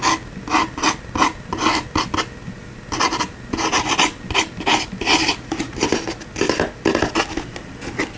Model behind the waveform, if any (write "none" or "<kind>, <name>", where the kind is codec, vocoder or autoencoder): none